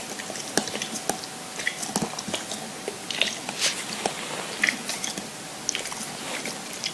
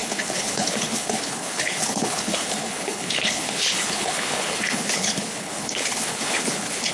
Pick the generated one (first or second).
second